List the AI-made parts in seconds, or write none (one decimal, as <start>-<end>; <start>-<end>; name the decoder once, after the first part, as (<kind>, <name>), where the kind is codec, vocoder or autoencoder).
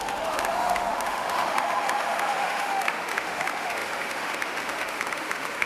0.0-5.7 (autoencoder, DAC-VAE)